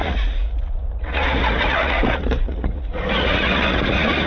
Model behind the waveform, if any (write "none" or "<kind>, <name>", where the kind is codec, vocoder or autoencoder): vocoder, Vocos